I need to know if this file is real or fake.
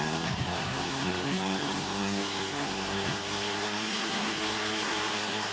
fake